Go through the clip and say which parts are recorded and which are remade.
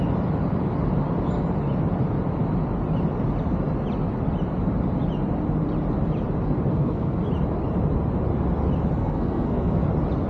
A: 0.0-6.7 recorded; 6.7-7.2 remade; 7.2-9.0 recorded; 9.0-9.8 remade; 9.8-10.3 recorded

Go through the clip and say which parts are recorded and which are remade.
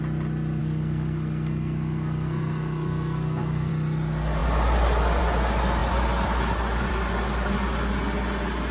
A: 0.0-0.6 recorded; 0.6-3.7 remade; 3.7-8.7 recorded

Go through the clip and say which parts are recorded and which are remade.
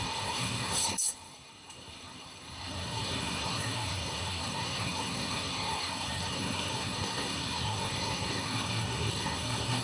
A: 0.0-9.8 remade